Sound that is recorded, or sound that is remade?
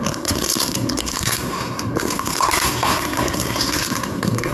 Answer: remade